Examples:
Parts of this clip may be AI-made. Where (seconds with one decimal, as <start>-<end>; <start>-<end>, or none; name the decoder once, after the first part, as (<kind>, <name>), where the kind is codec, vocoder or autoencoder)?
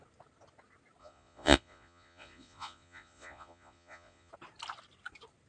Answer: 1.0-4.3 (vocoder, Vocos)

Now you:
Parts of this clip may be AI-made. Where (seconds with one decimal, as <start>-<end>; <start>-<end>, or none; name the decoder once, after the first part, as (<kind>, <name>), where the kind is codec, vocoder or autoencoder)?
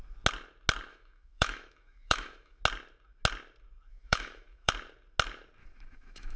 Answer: 0.9-2.6 (autoencoder, DAC-VAE); 3.9-4.7; 5.6-6.4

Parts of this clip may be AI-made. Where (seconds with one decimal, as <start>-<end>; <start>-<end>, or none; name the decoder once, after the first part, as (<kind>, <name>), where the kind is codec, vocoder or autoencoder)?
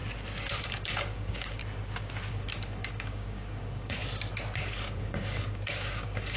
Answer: 0.6-1.6 (codec, DAC); 2.3-4.0; 4.6-6.4